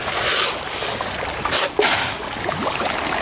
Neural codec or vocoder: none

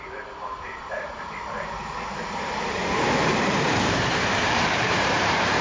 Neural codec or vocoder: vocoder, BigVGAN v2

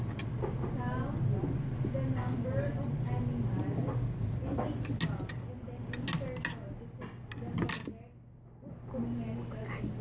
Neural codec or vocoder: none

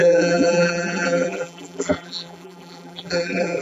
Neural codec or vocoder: vocoder, BigVGAN v2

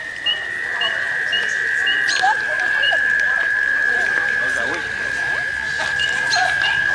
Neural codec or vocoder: vocoder, BigVGAN v2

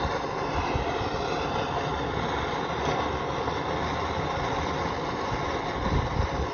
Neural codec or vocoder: none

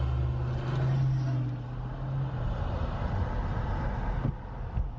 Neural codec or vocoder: none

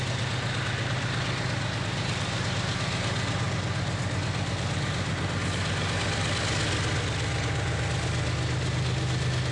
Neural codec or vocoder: none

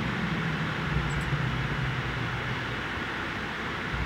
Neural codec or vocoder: none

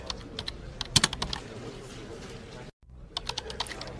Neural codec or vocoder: none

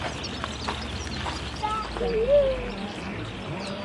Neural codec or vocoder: none